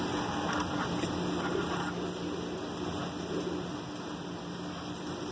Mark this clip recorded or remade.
recorded